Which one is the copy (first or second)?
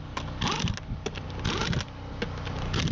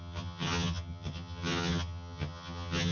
second